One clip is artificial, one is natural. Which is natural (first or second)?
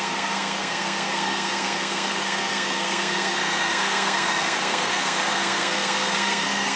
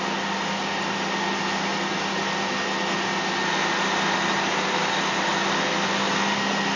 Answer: second